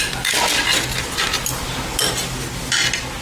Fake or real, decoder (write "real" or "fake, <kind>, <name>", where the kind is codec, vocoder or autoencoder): real